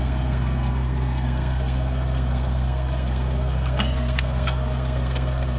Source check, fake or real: fake